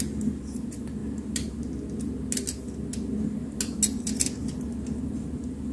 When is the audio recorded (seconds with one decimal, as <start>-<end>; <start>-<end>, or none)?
0.0-5.7